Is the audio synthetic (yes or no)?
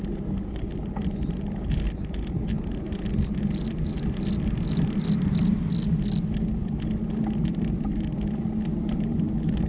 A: no